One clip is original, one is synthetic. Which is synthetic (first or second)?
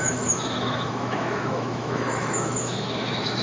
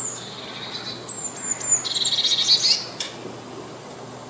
first